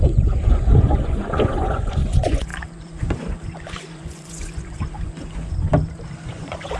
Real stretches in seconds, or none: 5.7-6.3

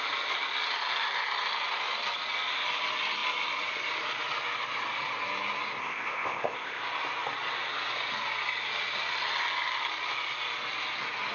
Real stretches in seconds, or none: 0.0-5.8; 6.8-11.3

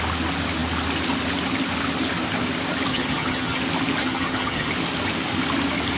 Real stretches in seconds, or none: 0.0-2.9; 3.6-4.0; 4.7-6.0

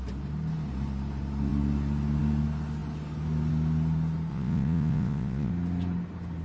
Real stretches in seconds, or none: 0.0-4.3; 5.5-6.4

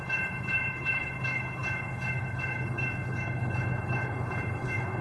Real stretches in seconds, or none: none